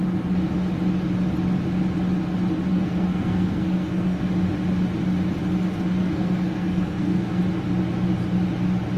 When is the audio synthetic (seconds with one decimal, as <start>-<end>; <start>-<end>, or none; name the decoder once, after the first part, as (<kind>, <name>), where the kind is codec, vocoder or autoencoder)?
2.7-4.2 (codec, SNAC); 6.0-7.4